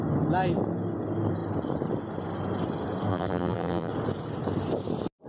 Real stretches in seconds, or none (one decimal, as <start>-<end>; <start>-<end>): 0.0-3.1; 3.9-5.3